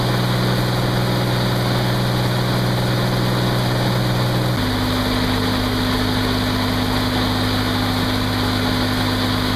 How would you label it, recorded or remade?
recorded